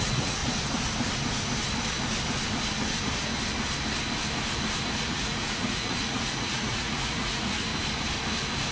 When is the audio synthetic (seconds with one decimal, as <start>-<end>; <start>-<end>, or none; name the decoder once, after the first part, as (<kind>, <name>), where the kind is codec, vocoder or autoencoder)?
0.0-0.4 (vocoder, Vocos); 5.0-7.7

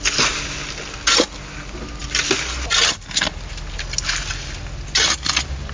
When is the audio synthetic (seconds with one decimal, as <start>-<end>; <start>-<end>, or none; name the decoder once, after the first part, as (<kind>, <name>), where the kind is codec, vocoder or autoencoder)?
none